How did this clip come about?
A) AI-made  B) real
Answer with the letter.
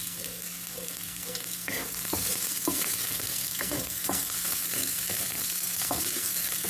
A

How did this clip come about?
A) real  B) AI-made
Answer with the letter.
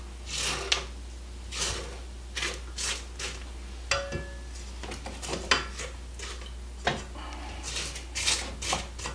A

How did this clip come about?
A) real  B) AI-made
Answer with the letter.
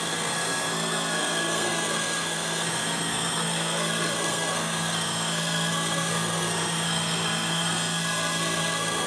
B